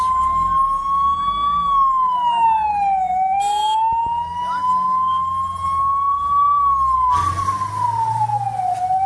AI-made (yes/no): no